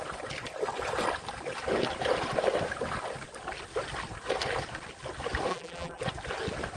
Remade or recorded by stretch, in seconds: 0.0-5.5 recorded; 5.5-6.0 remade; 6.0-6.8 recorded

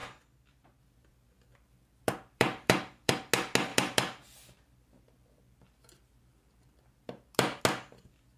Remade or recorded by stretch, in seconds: 0.0-1.5 recorded; 1.5-3.1 remade; 3.1-3.7 recorded; 3.7-7.6 remade; 7.6-8.4 recorded

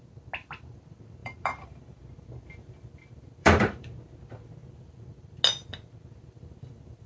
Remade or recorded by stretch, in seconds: 0.0-1.2 recorded; 1.2-2.0 remade; 2.0-3.4 recorded; 3.4-4.0 remade; 4.0-7.1 recorded

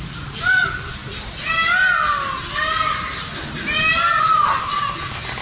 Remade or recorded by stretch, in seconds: 0.0-5.4 recorded

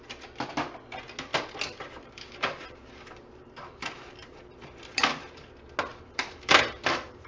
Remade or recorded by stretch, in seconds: 0.0-1.3 recorded; 1.3-5.5 remade; 5.5-5.9 recorded; 5.9-7.3 remade

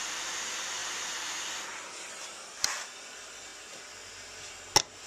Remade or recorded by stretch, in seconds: 0.0-5.1 recorded

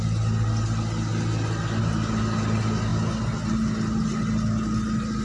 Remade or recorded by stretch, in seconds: 0.0-5.2 recorded